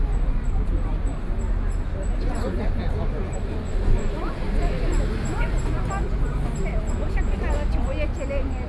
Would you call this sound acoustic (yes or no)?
yes